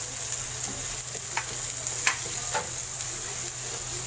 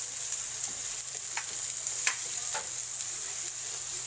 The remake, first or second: second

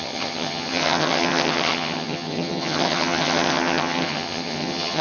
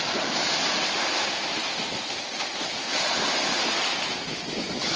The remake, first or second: first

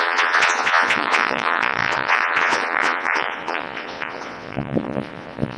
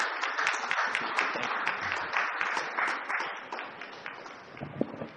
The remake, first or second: first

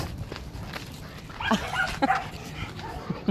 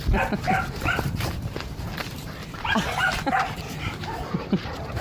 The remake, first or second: second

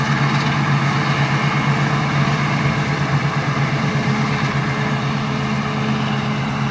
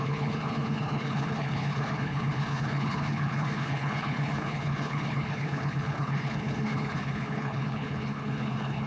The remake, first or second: second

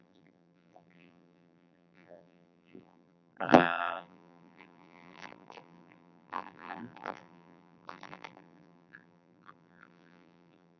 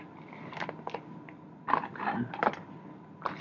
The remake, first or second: first